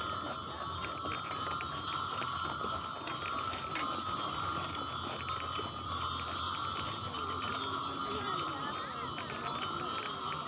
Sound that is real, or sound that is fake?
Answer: real